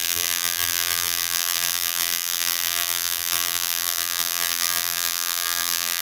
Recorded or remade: remade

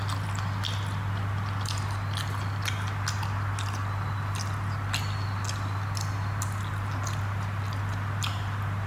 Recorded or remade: recorded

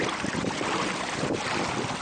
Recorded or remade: recorded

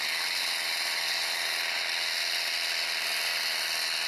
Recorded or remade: recorded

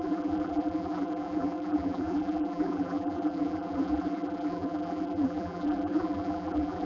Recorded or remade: remade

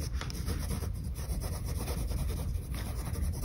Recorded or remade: remade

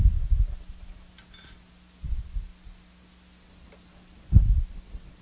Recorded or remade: recorded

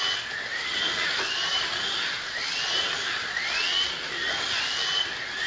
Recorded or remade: recorded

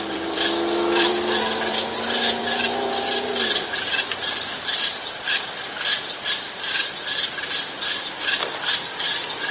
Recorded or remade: remade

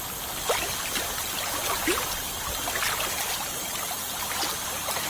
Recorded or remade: recorded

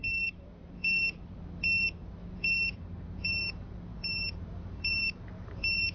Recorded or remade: remade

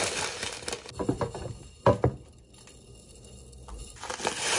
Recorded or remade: recorded